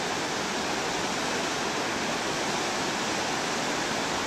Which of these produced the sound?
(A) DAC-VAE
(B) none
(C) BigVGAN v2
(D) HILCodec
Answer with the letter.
B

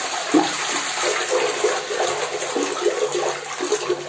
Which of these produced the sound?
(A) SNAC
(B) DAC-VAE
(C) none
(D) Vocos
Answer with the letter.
C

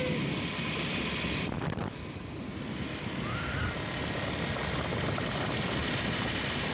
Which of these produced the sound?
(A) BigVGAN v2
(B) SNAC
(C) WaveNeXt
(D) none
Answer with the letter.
D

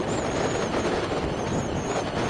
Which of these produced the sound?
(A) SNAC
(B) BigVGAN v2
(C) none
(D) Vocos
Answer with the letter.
C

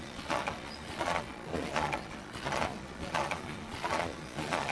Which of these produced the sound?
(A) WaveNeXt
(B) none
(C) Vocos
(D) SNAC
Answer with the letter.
C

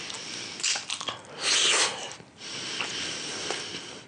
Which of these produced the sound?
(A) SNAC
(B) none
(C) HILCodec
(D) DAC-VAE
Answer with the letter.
B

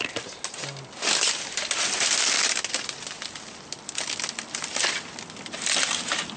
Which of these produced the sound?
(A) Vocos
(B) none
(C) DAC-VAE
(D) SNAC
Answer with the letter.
B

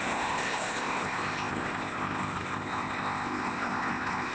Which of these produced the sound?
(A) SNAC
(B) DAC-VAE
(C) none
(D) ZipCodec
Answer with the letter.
D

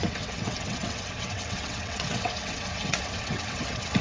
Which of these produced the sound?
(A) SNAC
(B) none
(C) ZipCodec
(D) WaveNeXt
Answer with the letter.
D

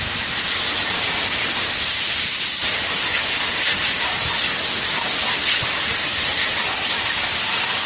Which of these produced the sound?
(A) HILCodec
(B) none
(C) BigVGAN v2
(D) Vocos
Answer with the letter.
B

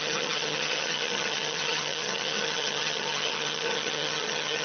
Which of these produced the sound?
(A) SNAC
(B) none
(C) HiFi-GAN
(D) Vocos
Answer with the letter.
C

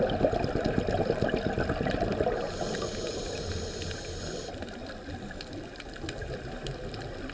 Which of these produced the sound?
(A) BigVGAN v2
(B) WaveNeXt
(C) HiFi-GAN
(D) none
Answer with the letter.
D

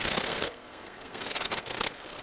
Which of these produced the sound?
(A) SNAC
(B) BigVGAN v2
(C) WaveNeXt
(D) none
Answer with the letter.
A